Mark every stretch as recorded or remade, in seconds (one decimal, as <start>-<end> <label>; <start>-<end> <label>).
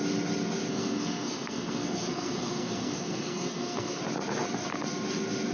0.0-0.7 recorded; 0.7-4.0 remade; 4.0-5.5 recorded